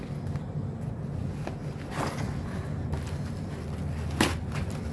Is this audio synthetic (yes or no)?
no